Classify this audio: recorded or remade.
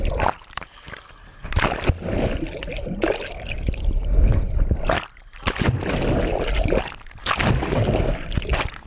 recorded